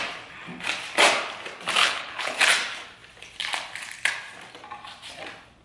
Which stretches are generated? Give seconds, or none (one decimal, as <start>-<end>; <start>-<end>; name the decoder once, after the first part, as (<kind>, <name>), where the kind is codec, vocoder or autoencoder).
1.8-2.4 (codec, HILCodec)